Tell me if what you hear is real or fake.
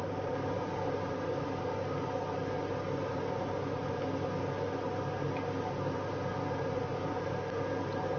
real